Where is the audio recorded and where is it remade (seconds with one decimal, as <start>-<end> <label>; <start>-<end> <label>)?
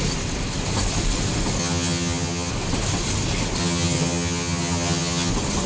0.0-1.6 recorded; 1.6-2.5 remade; 2.5-3.6 recorded; 3.6-5.3 remade; 5.3-5.7 recorded